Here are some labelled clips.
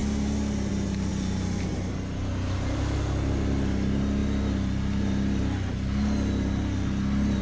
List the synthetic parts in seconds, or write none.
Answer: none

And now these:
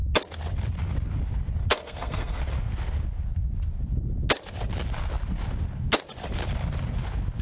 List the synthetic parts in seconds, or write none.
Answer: 1.6-2.4 (codec, SNAC)